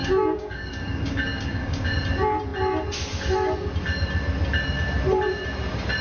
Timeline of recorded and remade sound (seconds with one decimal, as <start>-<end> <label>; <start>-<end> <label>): 0.0-1.9 remade; 1.9-6.0 recorded